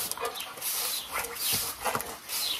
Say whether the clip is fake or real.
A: real